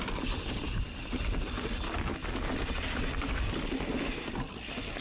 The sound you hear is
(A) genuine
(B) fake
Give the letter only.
A